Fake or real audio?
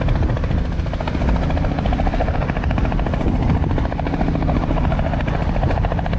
real